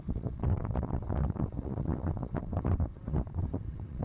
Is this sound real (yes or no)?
no